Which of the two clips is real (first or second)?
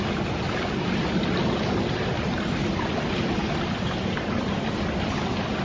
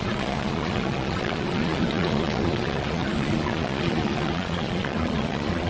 first